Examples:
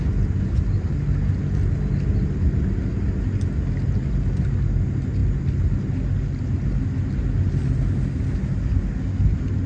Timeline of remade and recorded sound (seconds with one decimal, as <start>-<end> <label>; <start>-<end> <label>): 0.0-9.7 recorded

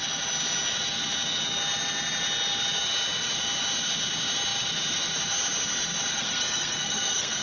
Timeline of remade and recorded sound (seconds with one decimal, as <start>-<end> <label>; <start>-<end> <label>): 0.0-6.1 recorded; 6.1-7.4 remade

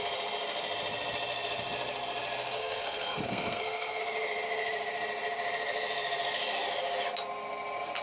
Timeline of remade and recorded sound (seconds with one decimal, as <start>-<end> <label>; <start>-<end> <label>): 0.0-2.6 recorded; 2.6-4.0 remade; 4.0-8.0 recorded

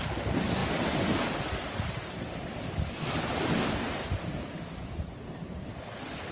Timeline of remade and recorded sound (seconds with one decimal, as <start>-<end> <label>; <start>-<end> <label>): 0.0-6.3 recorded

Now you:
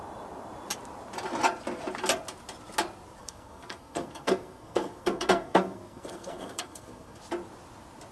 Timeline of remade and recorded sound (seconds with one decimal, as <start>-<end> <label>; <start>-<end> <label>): 0.0-3.2 recorded; 3.2-7.2 remade; 7.2-8.1 recorded

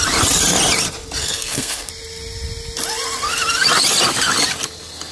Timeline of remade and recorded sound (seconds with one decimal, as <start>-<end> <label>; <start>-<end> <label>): 0.0-1.2 recorded; 1.2-1.9 remade; 1.9-5.1 recorded